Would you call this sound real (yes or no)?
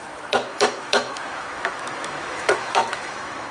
no